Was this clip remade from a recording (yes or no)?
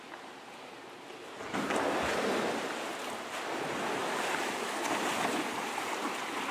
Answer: no